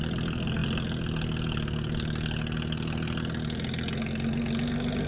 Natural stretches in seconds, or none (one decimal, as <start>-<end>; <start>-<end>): 0.0-5.1